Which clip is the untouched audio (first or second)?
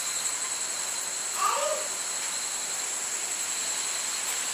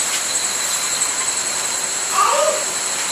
first